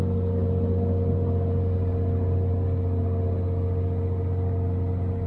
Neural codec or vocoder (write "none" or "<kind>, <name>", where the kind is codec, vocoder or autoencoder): none